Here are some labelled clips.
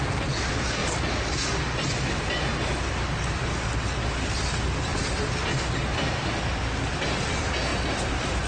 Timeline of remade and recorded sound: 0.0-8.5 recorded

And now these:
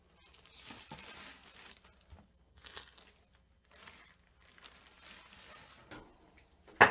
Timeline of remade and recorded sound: 0.0-2.5 recorded; 2.5-3.0 remade; 3.0-6.9 recorded

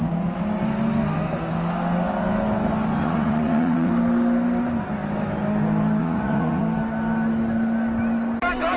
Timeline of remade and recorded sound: 0.0-3.0 recorded; 3.0-3.9 remade; 3.9-6.0 recorded; 6.0-6.6 remade; 6.6-8.8 recorded